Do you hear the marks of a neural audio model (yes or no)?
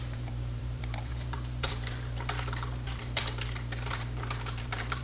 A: yes